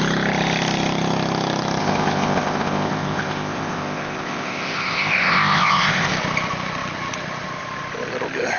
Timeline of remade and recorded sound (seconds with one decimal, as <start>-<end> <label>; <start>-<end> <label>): 0.0-1.8 recorded; 1.8-6.1 remade; 6.1-8.6 recorded